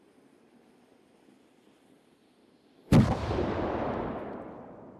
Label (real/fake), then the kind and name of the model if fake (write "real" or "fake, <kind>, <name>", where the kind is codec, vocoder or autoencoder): real